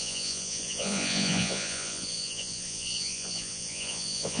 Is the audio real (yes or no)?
no